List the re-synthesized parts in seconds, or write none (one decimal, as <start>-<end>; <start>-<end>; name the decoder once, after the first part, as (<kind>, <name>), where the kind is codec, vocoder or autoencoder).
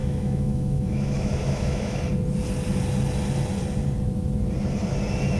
0.0-2.0 (autoencoder, DAC-VAE)